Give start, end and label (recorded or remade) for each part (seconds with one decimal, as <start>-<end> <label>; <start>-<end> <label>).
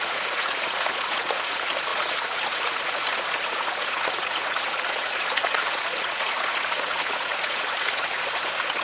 0.0-8.8 remade